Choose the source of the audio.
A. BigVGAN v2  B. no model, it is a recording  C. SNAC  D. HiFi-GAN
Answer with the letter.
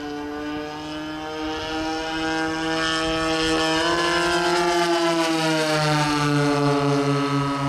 B